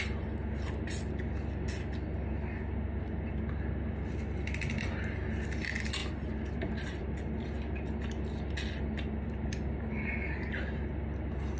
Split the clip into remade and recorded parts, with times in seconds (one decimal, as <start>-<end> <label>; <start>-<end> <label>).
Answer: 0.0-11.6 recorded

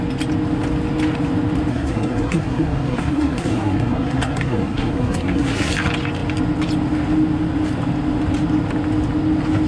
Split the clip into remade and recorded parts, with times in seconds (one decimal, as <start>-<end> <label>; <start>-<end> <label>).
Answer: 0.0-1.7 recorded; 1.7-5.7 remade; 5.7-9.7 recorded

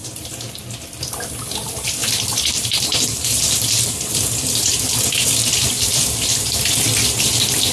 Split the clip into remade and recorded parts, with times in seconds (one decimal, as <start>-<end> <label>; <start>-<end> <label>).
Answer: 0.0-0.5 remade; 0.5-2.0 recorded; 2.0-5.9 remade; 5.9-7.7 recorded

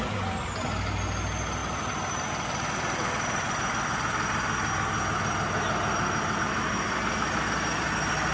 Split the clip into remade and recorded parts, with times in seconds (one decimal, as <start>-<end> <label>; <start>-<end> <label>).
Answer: 0.0-8.3 recorded